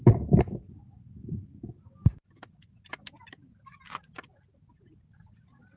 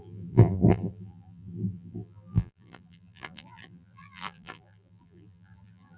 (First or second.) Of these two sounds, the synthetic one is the second